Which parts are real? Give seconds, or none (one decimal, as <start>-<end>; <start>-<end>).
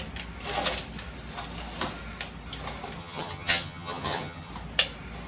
0.0-3.0; 4.5-5.3